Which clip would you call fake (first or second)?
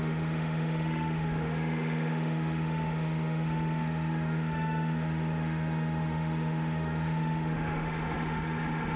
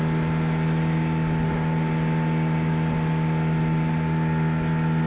first